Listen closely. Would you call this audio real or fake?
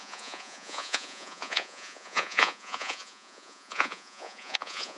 fake